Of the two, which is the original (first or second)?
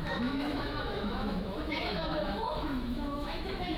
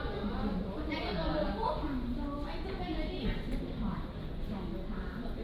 second